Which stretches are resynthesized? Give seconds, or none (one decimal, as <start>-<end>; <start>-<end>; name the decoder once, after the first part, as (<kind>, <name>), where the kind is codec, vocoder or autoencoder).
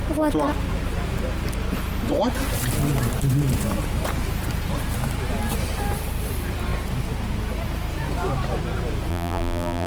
9.1-9.9 (vocoder, BigVGAN v2)